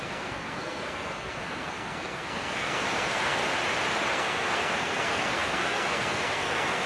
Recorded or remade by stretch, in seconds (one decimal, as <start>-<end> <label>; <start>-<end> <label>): 0.0-3.4 remade; 3.4-4.1 recorded; 4.1-6.9 remade

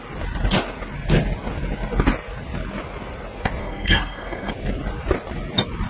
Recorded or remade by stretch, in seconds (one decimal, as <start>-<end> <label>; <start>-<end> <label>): 0.0-3.6 recorded; 3.6-4.5 remade; 4.5-5.9 recorded